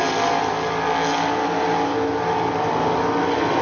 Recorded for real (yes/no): yes